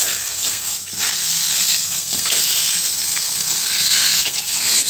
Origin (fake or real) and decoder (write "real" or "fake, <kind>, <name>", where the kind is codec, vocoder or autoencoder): fake, codec, SNAC